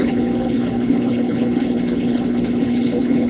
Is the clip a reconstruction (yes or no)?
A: yes